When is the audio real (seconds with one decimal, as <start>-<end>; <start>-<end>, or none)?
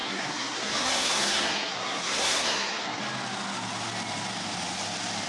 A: 3.0-5.3